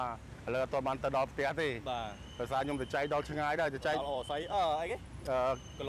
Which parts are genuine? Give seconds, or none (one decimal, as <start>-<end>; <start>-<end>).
0.0-3.3; 4.9-5.9